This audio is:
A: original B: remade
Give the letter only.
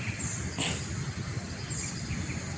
A